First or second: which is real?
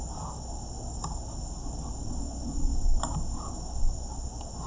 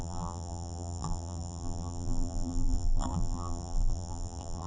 first